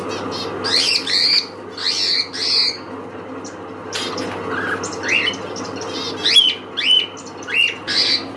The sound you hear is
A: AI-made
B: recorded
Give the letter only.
B